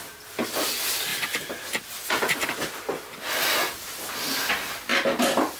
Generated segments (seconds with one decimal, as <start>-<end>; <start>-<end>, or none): none